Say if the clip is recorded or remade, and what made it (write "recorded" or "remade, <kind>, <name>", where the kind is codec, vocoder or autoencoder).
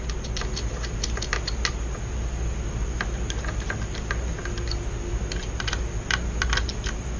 recorded